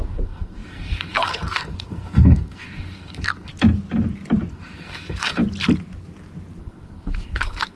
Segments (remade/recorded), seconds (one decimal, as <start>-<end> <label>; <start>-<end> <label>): 0.0-3.5 remade; 3.5-4.5 recorded; 4.5-5.4 remade; 5.4-6.6 recorded; 6.6-7.8 remade